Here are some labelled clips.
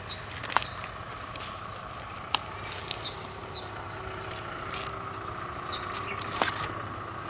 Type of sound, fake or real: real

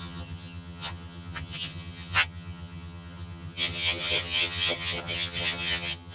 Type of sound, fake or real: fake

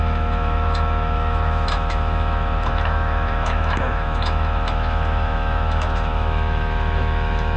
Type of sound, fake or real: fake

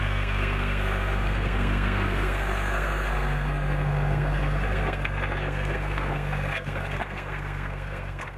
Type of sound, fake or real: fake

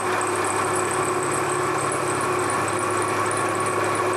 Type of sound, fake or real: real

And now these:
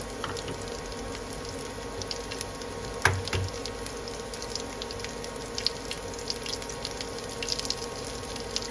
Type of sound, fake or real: real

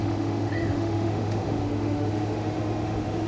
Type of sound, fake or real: fake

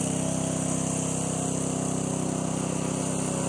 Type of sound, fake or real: real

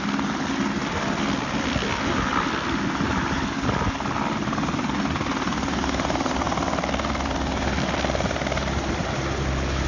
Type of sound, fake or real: real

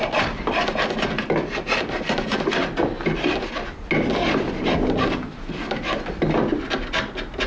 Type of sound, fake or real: real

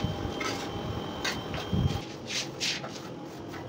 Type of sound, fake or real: real